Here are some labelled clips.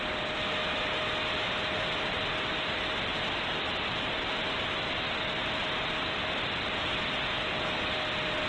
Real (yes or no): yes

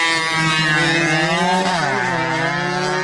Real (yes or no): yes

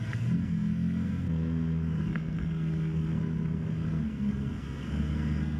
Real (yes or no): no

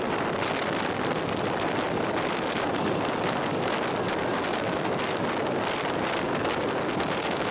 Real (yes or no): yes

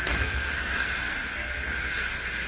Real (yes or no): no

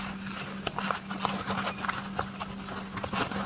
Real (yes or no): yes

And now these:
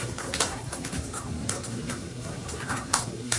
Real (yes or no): no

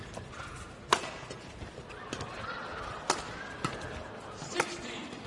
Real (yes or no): yes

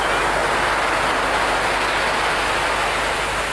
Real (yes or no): yes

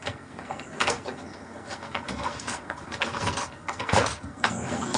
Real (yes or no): no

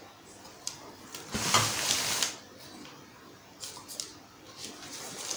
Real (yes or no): yes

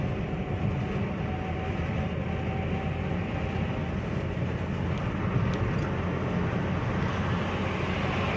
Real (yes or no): yes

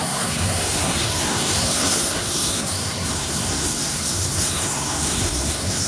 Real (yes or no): no